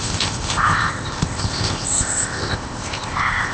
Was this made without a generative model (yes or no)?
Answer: no